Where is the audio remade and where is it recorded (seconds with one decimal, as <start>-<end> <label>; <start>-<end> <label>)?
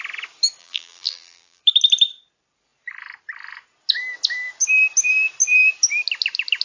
0.0-0.6 recorded; 0.6-1.6 remade; 1.6-6.6 recorded